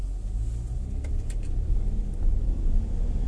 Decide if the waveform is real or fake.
real